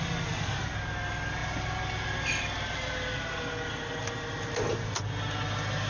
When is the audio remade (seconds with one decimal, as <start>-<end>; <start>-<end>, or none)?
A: none

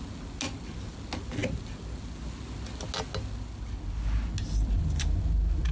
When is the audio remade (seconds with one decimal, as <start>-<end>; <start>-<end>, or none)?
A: none

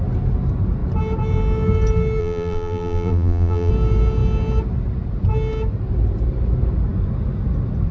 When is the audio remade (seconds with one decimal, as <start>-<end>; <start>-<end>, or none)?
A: 2.2-3.7

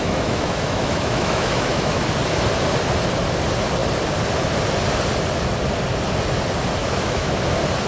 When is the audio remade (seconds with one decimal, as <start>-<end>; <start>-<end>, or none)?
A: 0.0-2.0; 6.8-7.3

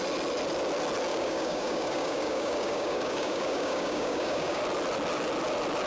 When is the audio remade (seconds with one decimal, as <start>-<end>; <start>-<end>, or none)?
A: 1.1-4.6

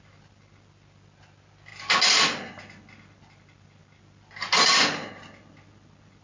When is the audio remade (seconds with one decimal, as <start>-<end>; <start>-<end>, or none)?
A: none

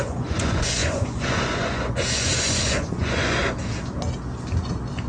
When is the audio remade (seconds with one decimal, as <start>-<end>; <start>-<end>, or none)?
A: 0.0-3.4